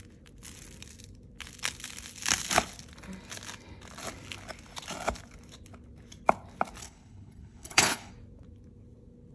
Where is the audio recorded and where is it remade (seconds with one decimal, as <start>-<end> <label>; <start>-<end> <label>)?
0.0-6.8 recorded; 6.8-8.1 remade; 8.1-9.3 recorded